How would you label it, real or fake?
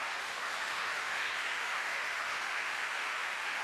fake